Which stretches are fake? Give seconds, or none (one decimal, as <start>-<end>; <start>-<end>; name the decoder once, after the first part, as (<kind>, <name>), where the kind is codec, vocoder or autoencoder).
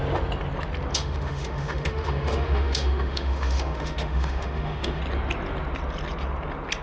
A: 0.9-5.0 (autoencoder, DAC-VAE)